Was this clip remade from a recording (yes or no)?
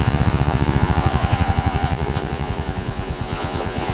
yes